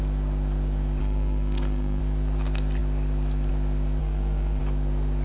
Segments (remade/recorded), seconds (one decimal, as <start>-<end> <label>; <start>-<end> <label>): 0.0-1.0 recorded; 1.0-2.0 remade; 2.0-4.0 recorded; 4.0-4.6 remade; 4.6-5.2 recorded